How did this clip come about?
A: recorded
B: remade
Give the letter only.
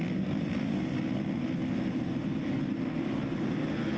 A